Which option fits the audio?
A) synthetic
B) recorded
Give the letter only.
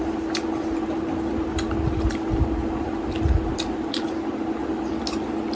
B